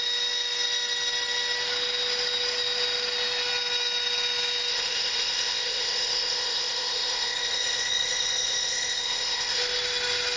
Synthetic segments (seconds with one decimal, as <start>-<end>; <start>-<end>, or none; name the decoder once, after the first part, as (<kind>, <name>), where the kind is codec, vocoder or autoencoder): 4.7-9.6 (codec, ZipCodec)